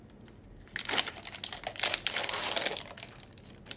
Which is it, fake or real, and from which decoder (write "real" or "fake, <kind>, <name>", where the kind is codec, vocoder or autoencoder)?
real